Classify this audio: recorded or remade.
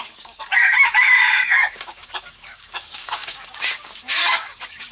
remade